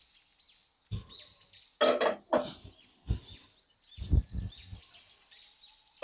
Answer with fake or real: real